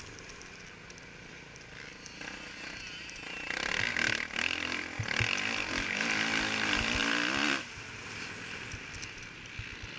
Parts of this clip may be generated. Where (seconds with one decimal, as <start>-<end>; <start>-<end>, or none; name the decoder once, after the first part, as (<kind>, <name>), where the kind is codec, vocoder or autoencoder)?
none